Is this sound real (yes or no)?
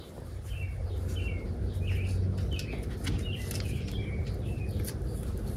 yes